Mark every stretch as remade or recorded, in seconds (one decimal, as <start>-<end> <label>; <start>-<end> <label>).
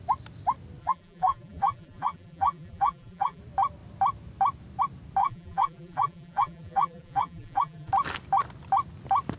0.0-0.8 recorded; 0.8-3.4 remade; 3.4-5.2 recorded; 5.2-7.9 remade; 7.9-9.4 recorded